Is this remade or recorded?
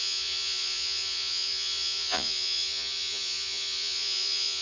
remade